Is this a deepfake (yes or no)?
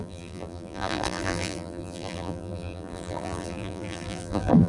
yes